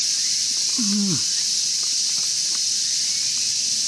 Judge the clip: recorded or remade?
recorded